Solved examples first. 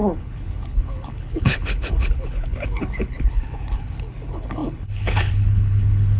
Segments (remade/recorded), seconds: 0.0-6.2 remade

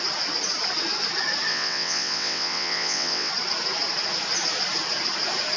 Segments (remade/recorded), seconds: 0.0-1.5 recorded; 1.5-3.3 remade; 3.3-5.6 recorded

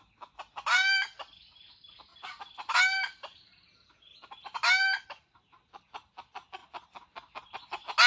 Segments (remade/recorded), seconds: 0.0-8.1 recorded

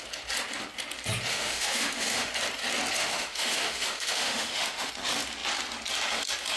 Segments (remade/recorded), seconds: 0.0-1.3 recorded; 1.3-2.3 remade; 2.3-3.0 recorded; 3.0-4.9 remade; 4.9-6.6 recorded

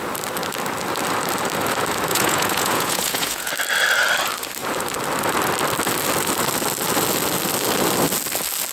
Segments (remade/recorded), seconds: 0.0-2.1 recorded; 2.1-3.5 remade; 3.5-8.7 recorded

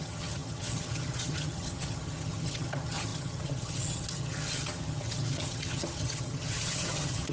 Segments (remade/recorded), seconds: 0.0-7.3 remade

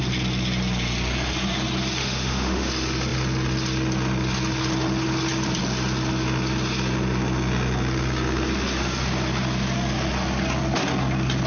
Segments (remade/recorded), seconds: 0.0-2.0 recorded; 2.0-2.7 remade; 2.7-11.5 recorded